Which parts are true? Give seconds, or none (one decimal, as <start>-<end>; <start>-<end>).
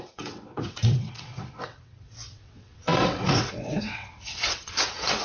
none